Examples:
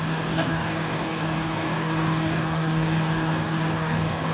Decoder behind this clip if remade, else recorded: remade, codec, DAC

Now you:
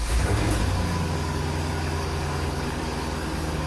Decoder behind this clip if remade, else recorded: remade, codec, DAC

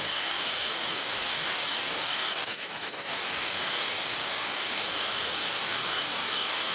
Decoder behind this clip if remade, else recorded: remade, codec, DAC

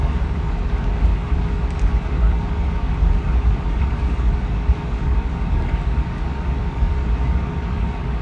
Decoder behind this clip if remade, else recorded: remade, codec, DAC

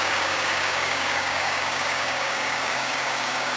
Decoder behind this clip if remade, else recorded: remade, codec, DAC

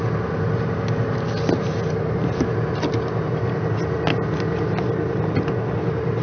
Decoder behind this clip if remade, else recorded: recorded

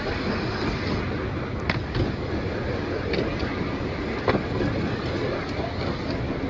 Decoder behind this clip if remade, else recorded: recorded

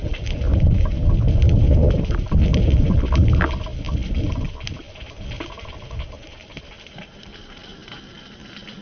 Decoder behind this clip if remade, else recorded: recorded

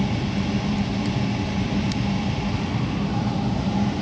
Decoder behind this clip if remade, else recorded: recorded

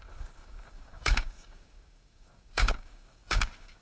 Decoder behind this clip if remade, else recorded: remade, codec, DAC